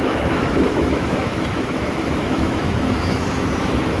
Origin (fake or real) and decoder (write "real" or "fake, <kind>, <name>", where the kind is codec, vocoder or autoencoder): fake, autoencoder, DAC-VAE